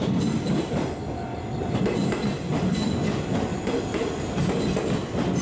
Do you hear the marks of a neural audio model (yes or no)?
no